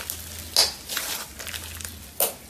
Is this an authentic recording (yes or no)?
yes